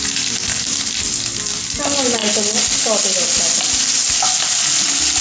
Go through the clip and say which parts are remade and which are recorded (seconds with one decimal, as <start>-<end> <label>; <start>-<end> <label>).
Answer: 0.0-5.2 recorded